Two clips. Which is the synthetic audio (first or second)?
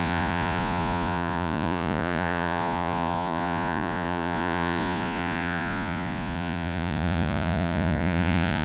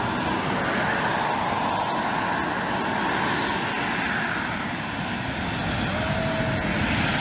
first